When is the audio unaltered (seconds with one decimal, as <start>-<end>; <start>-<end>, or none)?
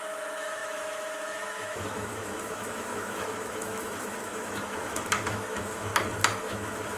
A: 5.9-6.4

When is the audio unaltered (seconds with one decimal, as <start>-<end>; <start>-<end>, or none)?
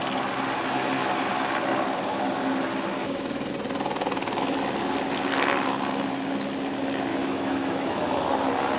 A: 0.0-3.0; 3.5-7.1; 8.2-8.8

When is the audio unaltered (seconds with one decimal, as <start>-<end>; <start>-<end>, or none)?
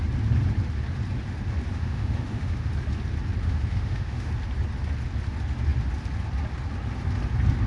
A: 0.0-1.7; 2.7-3.4; 4.3-7.7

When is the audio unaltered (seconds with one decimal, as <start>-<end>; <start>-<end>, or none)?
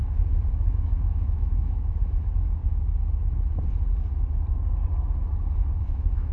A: 0.0-0.5; 2.6-5.8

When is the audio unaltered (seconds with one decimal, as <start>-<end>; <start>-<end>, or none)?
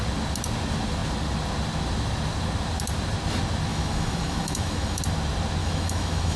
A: 0.0-3.7; 5.0-5.6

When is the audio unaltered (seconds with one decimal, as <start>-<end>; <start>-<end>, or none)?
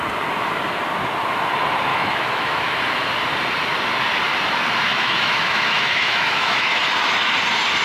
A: 0.0-1.9; 2.8-4.9; 6.8-7.8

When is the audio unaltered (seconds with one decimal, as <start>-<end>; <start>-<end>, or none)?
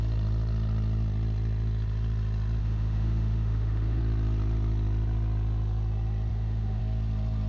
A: 0.0-2.6; 4.0-6.3; 6.8-7.5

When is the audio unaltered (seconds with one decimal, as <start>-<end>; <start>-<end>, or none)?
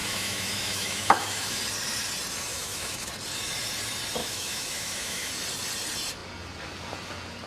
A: 1.6-2.5; 3.1-4.2; 5.3-7.5